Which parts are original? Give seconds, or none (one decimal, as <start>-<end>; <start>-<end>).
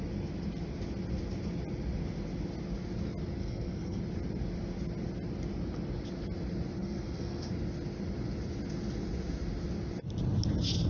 0.0-3.4; 4.0-6.8; 7.5-10.9